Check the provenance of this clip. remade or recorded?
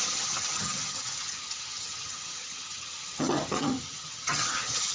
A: remade